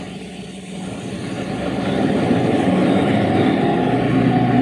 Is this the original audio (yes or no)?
yes